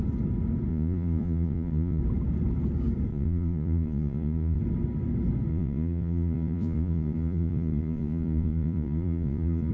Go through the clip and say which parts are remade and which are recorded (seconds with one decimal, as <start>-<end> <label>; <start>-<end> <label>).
0.0-0.7 recorded; 0.7-2.0 remade; 2.0-3.1 recorded; 3.1-4.6 remade; 4.6-5.5 recorded; 5.5-9.7 remade